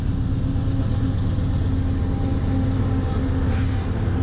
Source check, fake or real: real